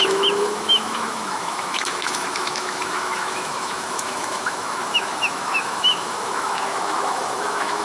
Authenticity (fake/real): fake